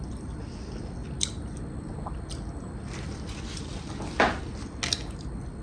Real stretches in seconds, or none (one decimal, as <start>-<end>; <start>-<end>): 0.0-5.6